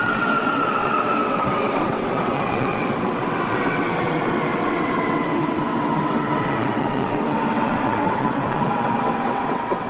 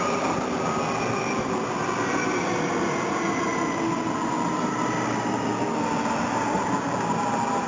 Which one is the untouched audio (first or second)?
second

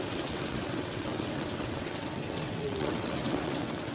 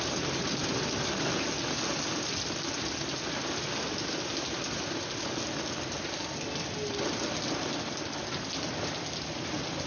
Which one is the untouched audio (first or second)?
second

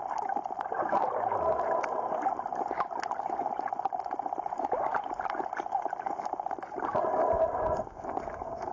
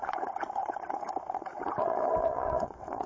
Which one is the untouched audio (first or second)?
first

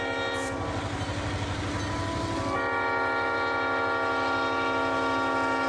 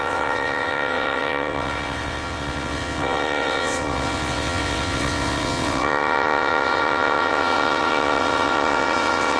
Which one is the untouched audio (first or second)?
first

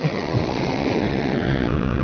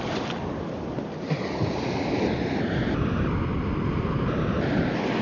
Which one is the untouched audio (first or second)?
second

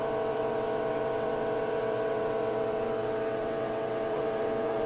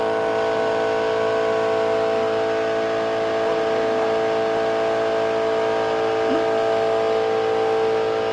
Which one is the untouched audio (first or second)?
second